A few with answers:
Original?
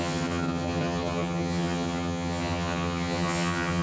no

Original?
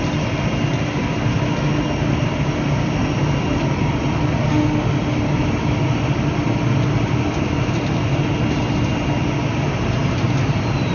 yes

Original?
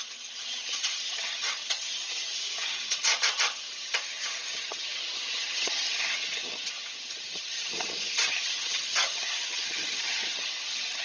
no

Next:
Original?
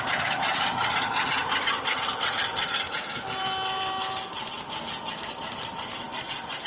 yes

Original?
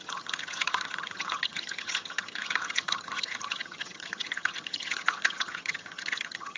no